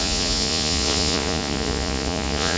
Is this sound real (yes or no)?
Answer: no